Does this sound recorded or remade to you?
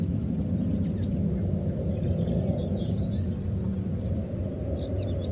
recorded